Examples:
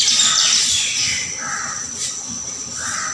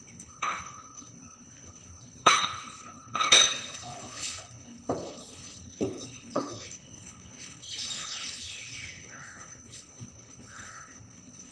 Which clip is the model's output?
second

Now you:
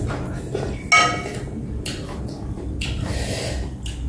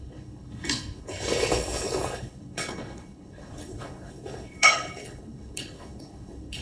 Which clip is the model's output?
second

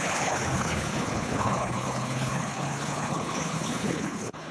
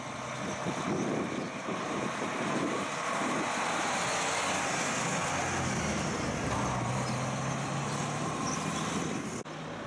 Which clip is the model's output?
first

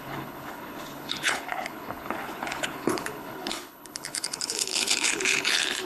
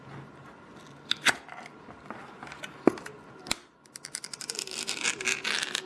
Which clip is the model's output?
first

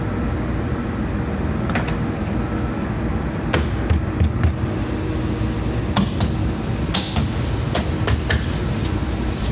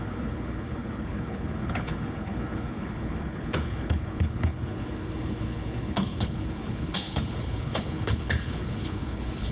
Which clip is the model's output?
second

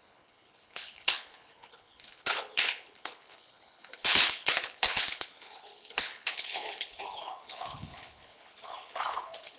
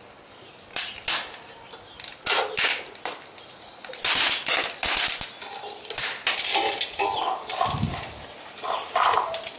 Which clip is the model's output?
first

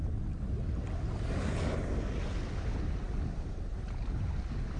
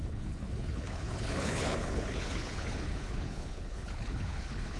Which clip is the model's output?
second